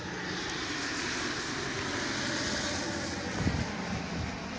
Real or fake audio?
real